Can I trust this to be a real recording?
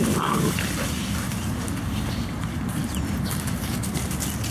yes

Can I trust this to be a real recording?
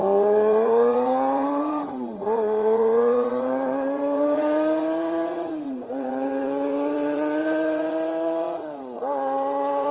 no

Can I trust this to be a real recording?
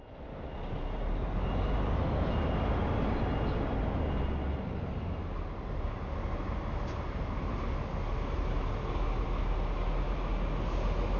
yes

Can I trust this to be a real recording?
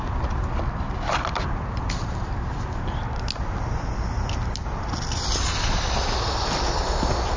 yes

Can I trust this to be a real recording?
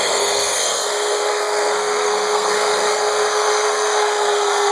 no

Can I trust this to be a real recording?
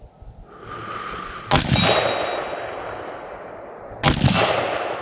yes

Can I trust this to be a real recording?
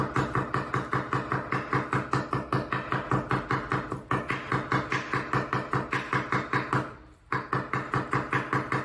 yes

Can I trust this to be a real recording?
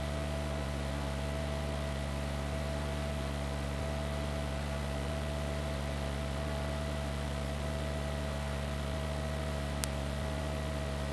yes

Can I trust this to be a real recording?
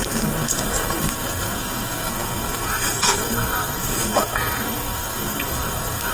no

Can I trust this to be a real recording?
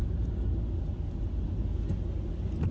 yes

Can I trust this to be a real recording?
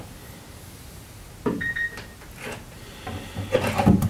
yes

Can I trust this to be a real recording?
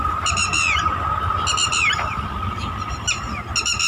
yes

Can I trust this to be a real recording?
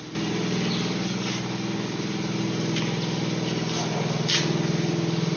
yes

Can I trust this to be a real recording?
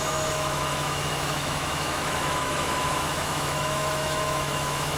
no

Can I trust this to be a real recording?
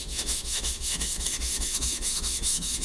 no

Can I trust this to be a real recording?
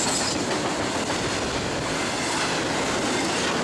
yes